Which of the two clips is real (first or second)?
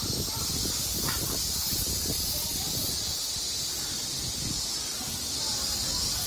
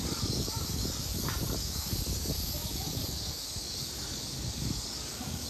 first